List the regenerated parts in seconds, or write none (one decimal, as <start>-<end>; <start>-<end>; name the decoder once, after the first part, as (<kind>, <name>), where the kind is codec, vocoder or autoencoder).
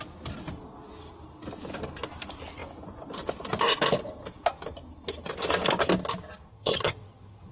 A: 6.5-7.5 (vocoder, HiFi-GAN)